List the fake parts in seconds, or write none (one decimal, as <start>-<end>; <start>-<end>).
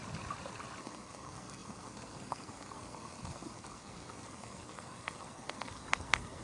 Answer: 0.8-6.4